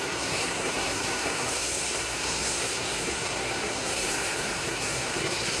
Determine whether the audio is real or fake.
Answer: fake